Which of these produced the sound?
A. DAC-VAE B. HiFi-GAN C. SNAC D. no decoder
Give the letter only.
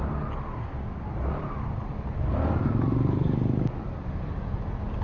D